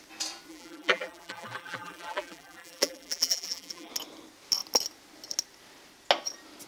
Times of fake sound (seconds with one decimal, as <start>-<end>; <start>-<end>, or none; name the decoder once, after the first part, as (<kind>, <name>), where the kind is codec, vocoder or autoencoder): 0.5-3.9 (vocoder, BigVGAN v2)